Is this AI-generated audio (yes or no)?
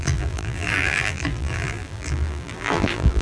yes